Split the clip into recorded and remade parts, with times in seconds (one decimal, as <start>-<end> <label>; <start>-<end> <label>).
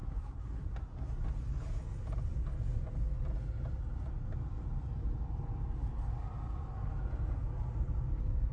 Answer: 0.0-1.1 remade; 1.1-8.5 recorded